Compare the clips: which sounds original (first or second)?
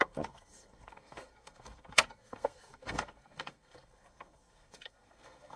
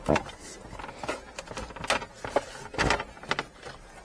second